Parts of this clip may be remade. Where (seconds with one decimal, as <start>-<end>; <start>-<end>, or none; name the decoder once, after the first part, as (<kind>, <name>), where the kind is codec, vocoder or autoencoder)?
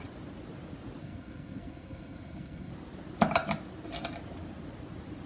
1.0-2.7 (codec, SNAC)